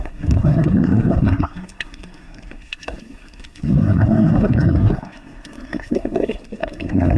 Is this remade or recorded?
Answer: remade